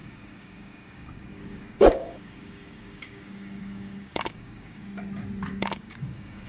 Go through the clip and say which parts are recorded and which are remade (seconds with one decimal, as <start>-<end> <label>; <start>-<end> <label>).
0.0-4.8 remade; 4.8-5.5 recorded; 5.5-6.5 remade